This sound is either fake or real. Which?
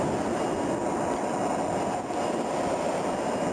real